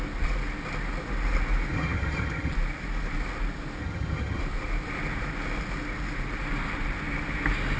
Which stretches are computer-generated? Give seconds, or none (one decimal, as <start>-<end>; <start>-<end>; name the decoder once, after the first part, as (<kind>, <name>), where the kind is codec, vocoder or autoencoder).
1.7-2.5 (vocoder, HiFi-GAN); 3.8-4.4